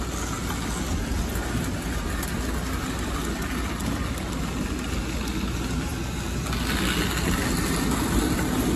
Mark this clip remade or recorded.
recorded